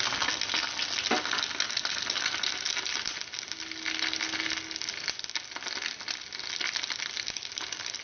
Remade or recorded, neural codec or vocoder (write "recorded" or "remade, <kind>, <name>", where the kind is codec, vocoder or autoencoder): recorded